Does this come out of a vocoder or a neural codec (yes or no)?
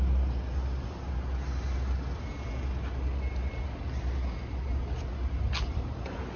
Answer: no